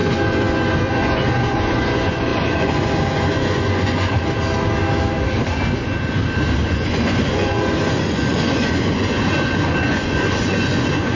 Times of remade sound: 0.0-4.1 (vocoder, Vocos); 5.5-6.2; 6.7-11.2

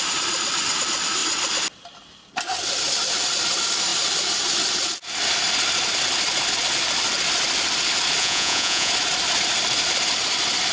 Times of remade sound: 8.2-8.9 (vocoder, Vocos)

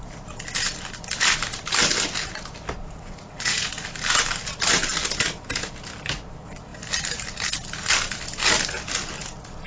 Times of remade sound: 2.8-3.7 (vocoder, Vocos)

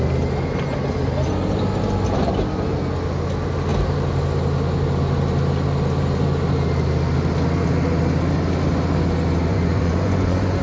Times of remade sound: 9.5-10.6 (vocoder, Vocos)

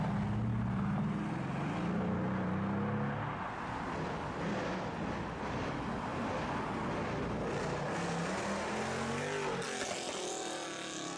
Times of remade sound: none

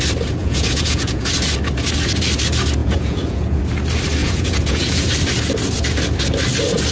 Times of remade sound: 0.4-1.3 (vocoder, Vocos); 2.8-3.6; 4.2-5.1

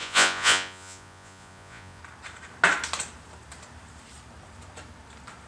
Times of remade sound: 0.0-2.0 (vocoder, Vocos)